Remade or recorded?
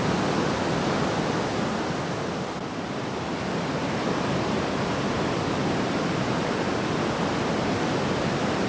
recorded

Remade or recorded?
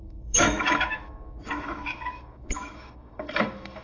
remade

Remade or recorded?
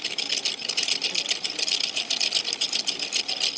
recorded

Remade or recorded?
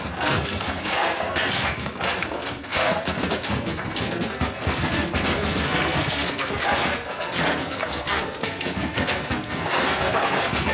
remade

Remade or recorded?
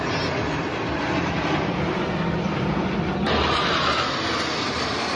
recorded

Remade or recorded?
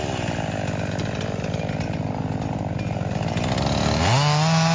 recorded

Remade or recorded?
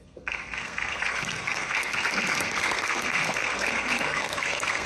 remade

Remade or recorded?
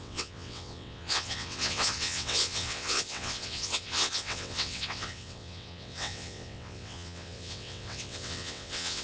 remade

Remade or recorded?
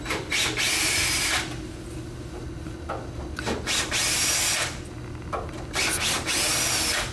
recorded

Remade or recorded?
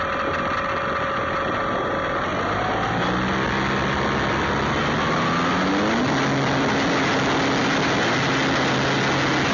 recorded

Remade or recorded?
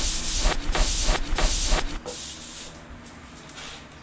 recorded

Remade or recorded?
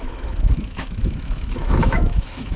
remade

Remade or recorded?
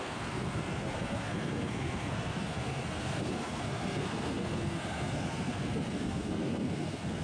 remade